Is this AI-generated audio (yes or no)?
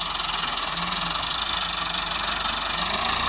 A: no